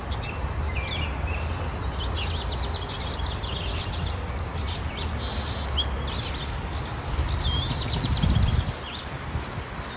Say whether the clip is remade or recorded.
recorded